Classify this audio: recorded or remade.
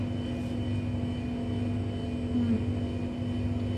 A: recorded